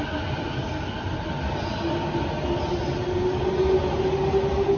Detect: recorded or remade recorded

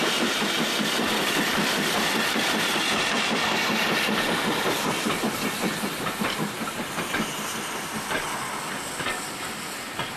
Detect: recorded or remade recorded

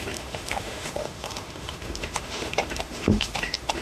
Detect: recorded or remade remade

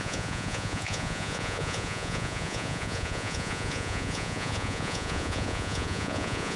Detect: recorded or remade remade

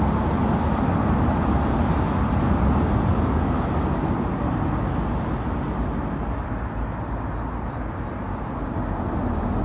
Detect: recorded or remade recorded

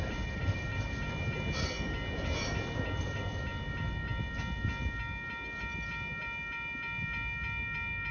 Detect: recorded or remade recorded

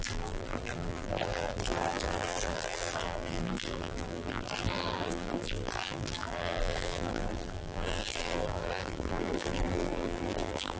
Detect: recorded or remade remade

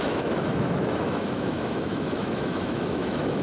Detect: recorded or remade remade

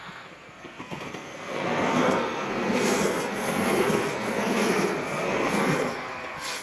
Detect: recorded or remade remade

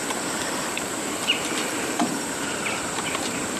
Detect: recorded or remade remade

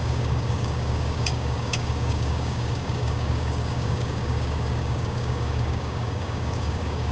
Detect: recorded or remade remade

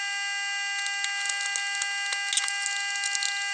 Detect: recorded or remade recorded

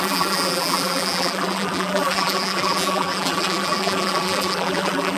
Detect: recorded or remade remade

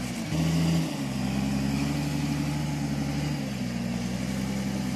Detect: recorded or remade recorded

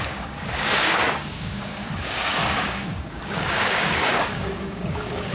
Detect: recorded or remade remade